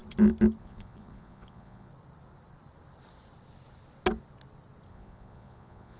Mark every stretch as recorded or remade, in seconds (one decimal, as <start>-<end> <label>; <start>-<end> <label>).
0.0-0.6 recorded; 0.6-1.9 remade; 1.9-4.9 recorded; 4.9-6.0 remade